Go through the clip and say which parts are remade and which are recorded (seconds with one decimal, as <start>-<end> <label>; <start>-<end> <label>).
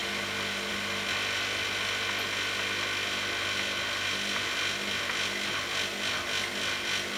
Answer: 0.0-7.2 recorded